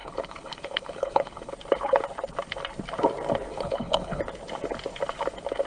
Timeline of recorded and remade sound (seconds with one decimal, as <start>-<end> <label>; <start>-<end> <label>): 0.0-1.5 remade; 1.5-3.5 recorded; 3.5-4.2 remade; 4.2-5.7 recorded